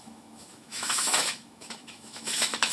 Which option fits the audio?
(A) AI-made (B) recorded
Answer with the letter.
A